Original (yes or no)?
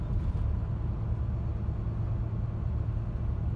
yes